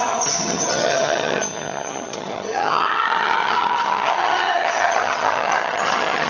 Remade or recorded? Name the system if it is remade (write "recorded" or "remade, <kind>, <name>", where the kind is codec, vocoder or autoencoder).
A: remade, vocoder, HiFi-GAN